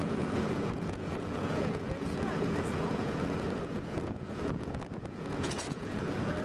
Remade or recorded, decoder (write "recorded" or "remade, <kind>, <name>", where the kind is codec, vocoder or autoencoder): remade, vocoder, Vocos